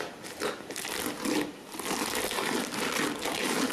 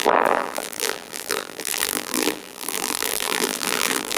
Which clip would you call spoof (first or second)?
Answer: second